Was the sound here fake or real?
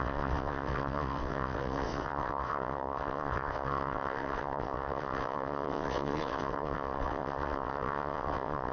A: fake